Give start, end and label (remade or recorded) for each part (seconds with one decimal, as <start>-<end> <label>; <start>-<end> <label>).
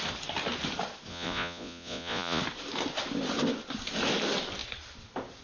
0.0-1.1 recorded; 1.1-2.4 remade; 2.4-5.4 recorded